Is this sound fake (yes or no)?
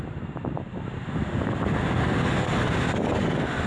no